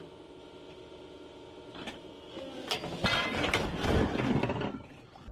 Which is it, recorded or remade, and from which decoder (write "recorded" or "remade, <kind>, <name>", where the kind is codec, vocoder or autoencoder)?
recorded